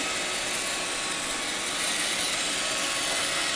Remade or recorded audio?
recorded